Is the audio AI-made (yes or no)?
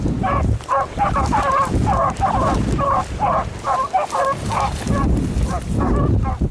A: no